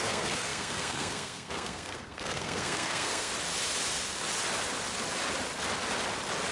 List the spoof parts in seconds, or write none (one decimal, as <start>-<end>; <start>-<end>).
0.0-3.3